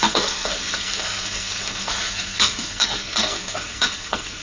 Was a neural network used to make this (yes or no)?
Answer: yes